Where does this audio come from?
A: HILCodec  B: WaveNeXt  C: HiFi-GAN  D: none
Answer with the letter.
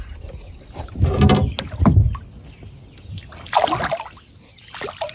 D